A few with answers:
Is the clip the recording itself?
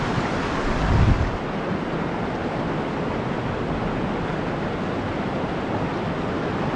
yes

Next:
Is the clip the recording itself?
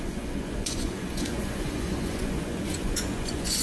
no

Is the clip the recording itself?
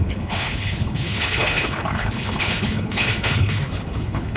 no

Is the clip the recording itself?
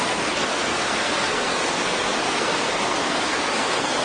no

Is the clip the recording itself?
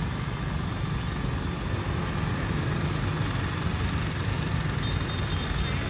yes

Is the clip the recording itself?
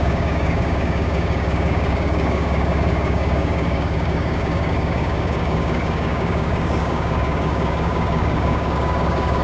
no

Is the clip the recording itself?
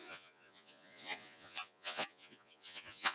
no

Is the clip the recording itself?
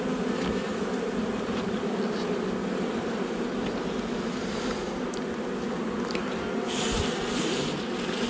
yes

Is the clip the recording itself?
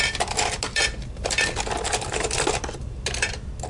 yes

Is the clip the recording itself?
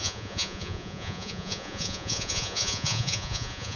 no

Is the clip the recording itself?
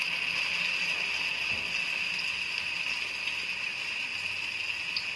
yes